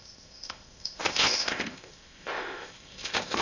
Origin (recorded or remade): remade